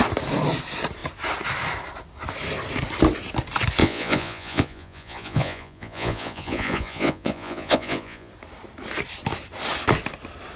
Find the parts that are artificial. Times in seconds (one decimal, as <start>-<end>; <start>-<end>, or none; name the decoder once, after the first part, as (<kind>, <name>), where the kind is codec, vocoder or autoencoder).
3.8-8.3 (vocoder, Vocos)